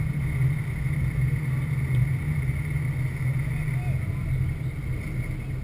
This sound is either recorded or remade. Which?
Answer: recorded